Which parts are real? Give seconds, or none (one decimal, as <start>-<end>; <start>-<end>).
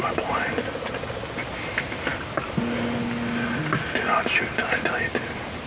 0.0-5.7